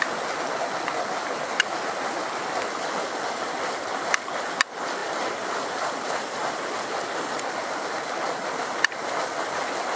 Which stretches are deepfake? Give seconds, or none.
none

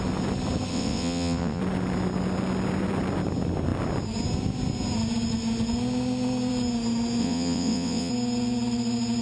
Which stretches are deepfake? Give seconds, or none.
0.7-1.6 (vocoder, WaveNeXt); 7.2-8.1

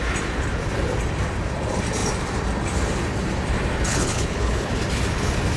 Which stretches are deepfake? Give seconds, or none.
3.9-4.7 (codec, HILCodec)

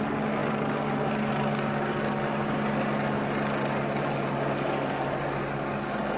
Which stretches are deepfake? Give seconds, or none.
none

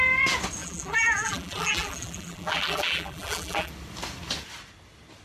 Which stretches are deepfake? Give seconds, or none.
0.6-3.7 (vocoder, BigVGAN v2)

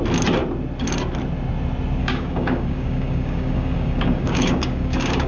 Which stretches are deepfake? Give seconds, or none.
2.0-5.3 (codec, DAC)

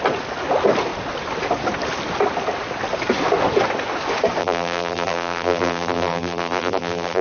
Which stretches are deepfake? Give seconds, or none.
4.4-7.2 (vocoder, BigVGAN v2)

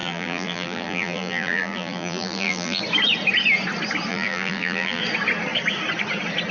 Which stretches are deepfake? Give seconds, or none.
0.0-2.8 (vocoder, BigVGAN v2); 4.1-5.0